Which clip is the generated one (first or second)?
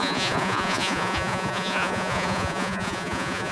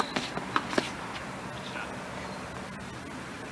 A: first